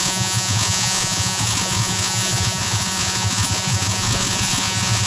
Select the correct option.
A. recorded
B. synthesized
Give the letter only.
B